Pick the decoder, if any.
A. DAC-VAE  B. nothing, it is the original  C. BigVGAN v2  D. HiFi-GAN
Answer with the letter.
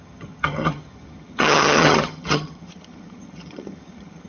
D